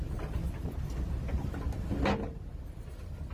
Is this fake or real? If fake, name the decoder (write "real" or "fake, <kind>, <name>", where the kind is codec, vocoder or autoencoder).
real